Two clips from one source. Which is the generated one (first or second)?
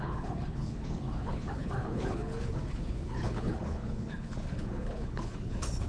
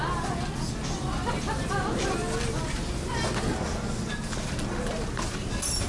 first